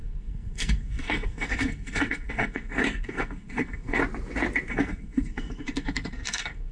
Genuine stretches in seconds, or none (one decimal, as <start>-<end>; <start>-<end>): 4.0-4.7